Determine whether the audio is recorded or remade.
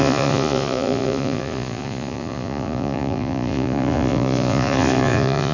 remade